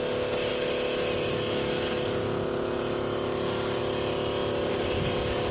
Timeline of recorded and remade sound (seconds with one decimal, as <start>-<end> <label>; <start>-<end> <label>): 0.0-5.5 recorded